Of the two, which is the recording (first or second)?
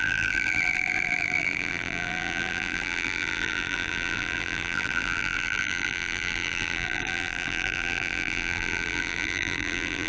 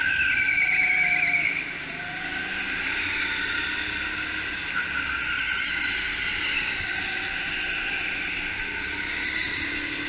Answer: second